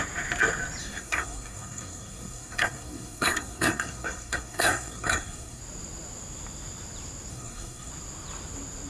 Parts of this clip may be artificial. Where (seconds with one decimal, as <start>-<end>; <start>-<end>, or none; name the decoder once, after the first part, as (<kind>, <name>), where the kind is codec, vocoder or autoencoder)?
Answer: 0.8-5.6 (codec, SNAC); 7.3-7.9